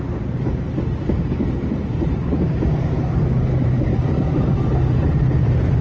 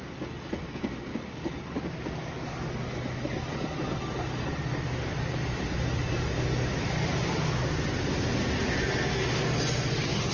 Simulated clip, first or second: first